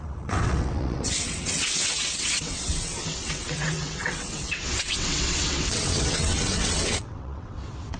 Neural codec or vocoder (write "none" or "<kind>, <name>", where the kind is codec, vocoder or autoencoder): vocoder, WaveNeXt